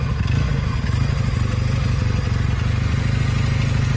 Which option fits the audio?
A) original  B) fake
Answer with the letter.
A